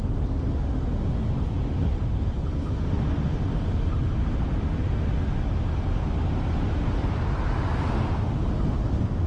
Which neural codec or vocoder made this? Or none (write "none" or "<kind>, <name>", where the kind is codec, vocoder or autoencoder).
none